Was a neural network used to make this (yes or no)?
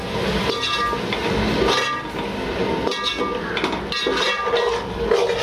no